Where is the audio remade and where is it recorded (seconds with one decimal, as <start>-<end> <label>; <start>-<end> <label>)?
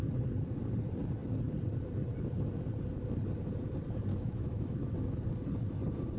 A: 0.0-4.1 recorded; 4.1-4.9 remade; 4.9-6.2 recorded